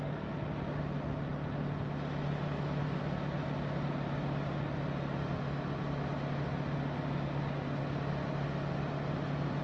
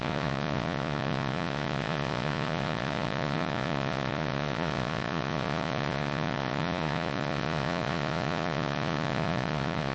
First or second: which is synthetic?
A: second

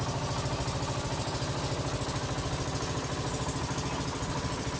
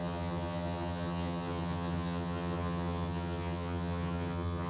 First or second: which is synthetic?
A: second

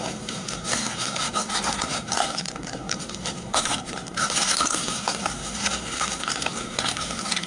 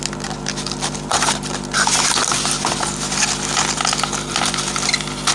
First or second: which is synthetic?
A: first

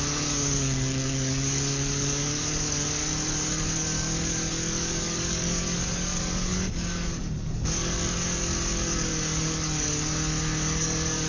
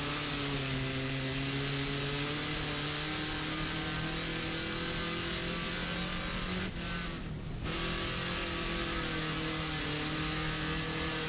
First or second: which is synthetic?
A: first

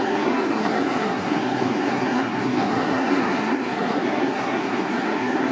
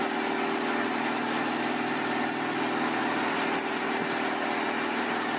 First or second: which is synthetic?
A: first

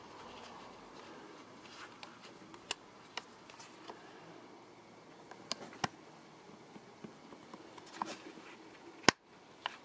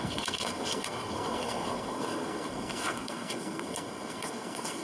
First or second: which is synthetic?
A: second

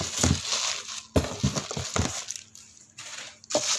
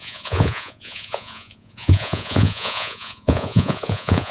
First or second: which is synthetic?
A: second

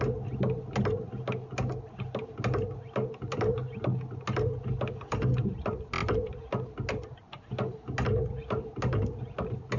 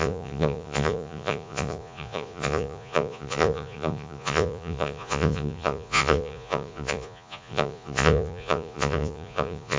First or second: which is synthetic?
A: second